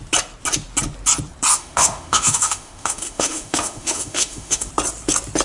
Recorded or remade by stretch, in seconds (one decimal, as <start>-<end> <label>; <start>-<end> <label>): 0.0-1.5 recorded; 1.5-4.7 remade; 4.7-5.4 recorded